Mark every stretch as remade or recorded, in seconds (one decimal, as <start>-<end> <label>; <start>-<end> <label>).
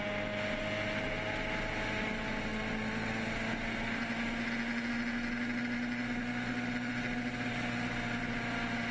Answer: 0.0-8.9 recorded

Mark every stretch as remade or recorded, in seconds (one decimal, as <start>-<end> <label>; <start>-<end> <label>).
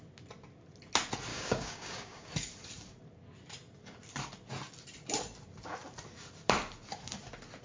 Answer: 0.0-1.3 recorded; 1.3-2.3 remade; 2.3-7.6 recorded